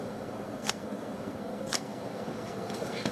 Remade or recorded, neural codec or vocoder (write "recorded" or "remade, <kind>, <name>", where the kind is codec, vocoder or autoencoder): remade, codec, SNAC